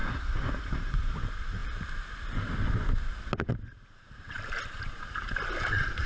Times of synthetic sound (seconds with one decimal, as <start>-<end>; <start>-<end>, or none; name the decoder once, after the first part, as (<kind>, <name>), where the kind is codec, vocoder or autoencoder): 0.0-0.8 (vocoder, BigVGAN v2); 4.0-4.8